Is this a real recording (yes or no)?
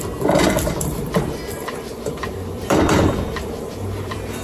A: no